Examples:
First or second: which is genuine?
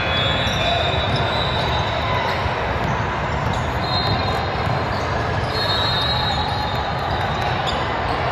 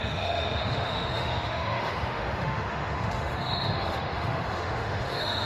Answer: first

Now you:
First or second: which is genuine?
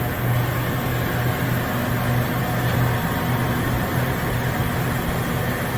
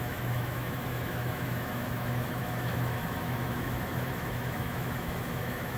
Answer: first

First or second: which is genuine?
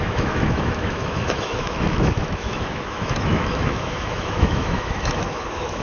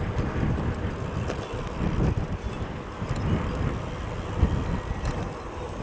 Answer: second